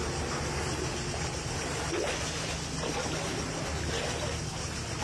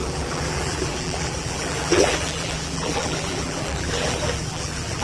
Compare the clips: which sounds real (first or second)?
first